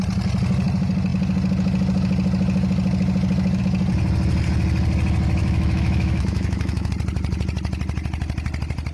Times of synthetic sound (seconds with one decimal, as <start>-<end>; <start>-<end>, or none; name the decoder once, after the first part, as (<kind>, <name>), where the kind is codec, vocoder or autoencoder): 5.4-6.9 (autoencoder, DAC-VAE)

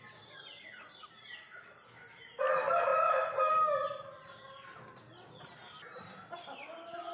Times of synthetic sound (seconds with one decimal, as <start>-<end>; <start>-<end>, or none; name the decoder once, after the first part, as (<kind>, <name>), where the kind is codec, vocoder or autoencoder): none

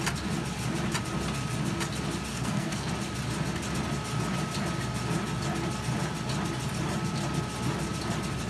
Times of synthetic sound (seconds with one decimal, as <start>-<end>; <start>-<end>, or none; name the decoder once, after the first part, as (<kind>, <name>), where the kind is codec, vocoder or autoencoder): 2.3-2.9 (codec, SNAC)